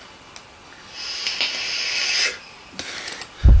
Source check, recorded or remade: recorded